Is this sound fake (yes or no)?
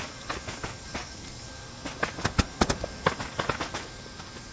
no